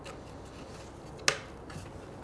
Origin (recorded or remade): recorded